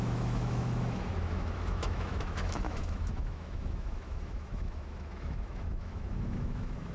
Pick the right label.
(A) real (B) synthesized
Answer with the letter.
B